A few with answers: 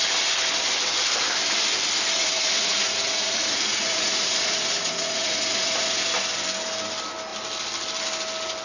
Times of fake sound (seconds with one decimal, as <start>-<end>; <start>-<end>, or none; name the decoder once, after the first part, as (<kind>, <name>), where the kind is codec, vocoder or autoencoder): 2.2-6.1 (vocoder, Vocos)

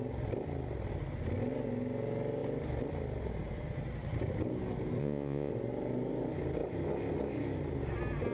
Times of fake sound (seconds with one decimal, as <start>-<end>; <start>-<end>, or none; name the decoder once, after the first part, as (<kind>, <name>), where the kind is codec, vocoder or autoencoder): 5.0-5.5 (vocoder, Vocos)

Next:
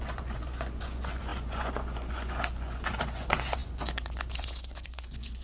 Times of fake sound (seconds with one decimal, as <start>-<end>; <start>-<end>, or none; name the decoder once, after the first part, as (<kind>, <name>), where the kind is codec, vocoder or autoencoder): 0.0-5.4 (vocoder, Vocos)